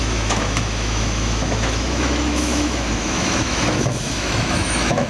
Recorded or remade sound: remade